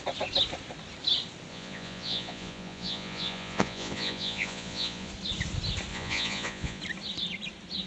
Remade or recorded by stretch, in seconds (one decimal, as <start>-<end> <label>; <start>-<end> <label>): 0.0-1.5 recorded; 1.5-5.1 remade; 5.1-5.9 recorded; 5.9-6.8 remade; 6.8-7.9 recorded